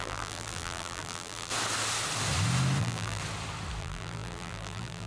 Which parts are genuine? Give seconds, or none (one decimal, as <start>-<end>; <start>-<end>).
1.5-2.8; 3.2-3.8